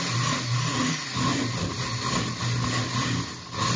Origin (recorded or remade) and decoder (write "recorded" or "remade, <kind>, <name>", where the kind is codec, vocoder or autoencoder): recorded